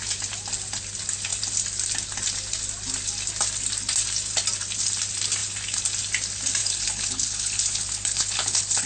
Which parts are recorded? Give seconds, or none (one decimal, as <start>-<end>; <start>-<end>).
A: 0.0-6.6